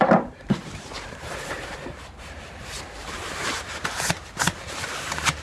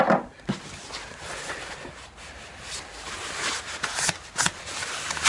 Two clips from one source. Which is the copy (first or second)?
first